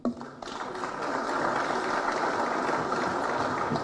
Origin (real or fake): real